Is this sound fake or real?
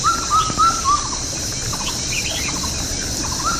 real